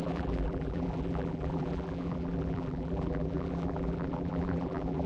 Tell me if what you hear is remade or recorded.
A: remade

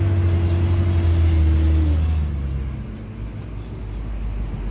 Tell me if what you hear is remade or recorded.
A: recorded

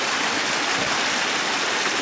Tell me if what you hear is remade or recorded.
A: recorded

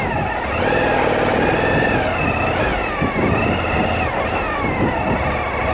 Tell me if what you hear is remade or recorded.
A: recorded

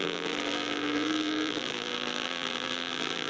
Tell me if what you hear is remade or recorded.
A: remade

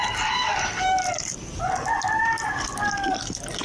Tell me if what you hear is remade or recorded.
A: recorded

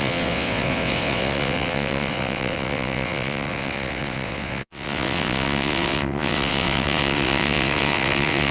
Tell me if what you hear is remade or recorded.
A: remade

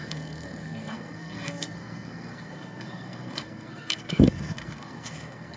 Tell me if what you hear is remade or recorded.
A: remade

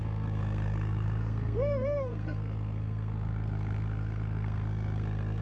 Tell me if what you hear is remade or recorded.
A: remade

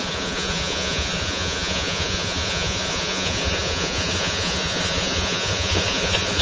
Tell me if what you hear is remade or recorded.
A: remade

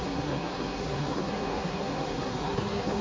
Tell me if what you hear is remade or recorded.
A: remade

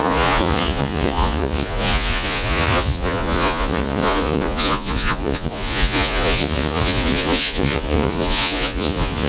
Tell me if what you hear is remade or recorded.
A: remade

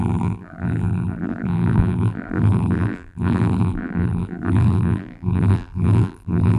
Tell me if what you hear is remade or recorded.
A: remade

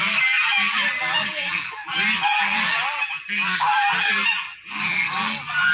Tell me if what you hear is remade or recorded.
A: remade